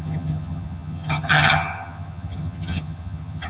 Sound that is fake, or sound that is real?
fake